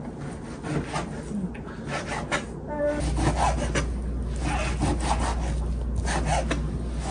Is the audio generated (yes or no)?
no